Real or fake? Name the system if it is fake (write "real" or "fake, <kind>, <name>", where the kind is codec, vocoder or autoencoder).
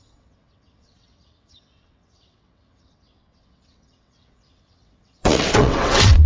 fake, vocoder, WaveNeXt